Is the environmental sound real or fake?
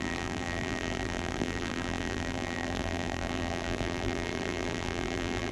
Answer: fake